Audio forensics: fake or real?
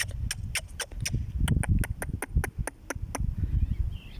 real